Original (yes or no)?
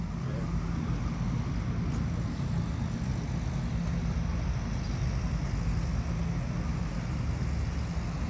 yes